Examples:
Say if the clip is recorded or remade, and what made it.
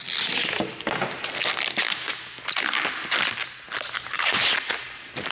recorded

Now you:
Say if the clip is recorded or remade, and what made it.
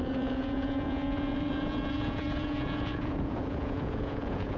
remade, vocoder, Vocos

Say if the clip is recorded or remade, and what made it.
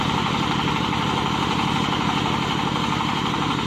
recorded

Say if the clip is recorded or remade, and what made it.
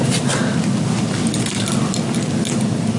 recorded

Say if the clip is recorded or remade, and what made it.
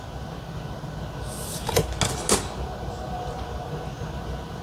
recorded